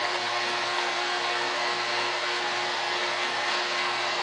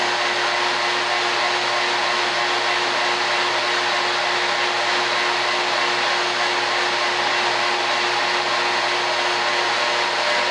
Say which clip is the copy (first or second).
first